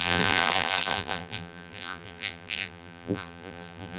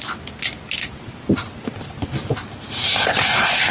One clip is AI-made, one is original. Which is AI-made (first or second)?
first